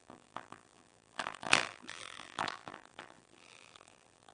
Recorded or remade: remade